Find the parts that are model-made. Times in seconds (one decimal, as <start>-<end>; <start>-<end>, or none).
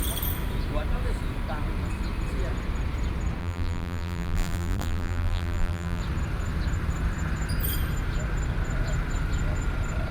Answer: 3.4-6.0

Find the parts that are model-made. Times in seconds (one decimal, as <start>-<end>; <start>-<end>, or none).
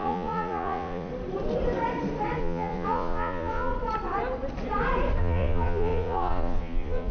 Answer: 0.0-1.1; 2.4-3.7; 5.2-7.1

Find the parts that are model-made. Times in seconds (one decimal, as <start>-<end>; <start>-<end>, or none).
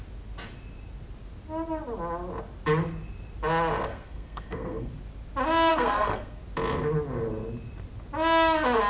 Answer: 3.9-4.9; 5.7-6.4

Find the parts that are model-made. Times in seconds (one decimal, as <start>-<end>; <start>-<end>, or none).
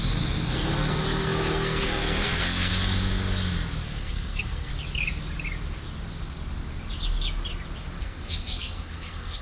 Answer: 0.0-2.7; 3.8-4.7; 8.0-9.4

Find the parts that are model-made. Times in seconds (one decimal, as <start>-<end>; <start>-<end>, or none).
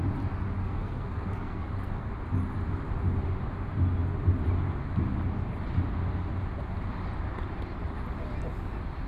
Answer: 0.6-2.1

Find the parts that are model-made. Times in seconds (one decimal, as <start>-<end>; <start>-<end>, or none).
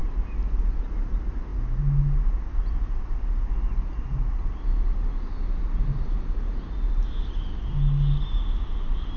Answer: 0.0-0.6